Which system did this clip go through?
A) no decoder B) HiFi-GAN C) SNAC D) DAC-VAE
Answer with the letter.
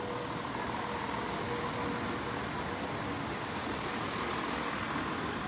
A